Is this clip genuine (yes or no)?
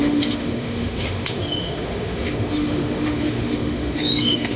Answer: no